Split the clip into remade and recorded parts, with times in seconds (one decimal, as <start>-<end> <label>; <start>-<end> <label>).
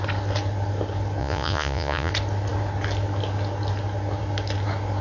0.0-1.2 recorded; 1.2-2.1 remade; 2.1-5.0 recorded